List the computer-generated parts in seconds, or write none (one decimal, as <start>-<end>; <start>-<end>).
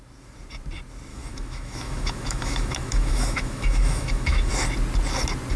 1.1-4.5